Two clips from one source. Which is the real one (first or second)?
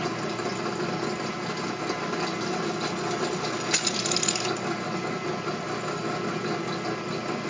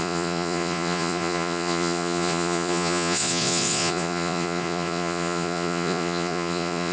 first